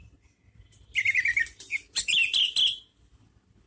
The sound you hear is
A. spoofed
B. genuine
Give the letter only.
A